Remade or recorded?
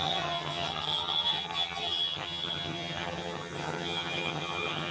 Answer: remade